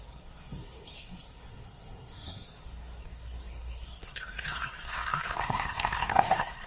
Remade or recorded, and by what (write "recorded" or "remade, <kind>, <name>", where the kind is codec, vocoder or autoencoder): remade, codec, SNAC